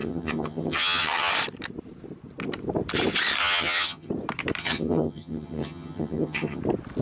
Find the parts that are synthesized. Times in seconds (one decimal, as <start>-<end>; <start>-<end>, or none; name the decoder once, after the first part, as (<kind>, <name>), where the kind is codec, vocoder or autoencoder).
0.0-1.3 (vocoder, HiFi-GAN); 3.4-4.1; 4.6-6.6